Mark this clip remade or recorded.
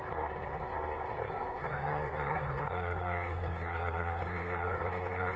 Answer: remade